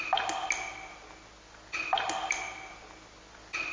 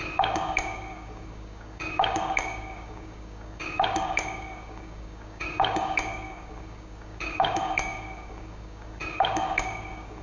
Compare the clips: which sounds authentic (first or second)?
first